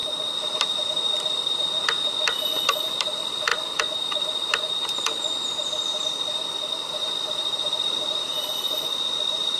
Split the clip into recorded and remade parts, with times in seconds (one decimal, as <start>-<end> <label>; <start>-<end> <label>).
0.0-2.8 recorded; 2.8-9.6 remade